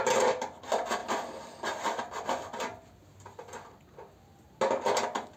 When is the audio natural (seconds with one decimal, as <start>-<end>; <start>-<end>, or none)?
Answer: 0.0-5.4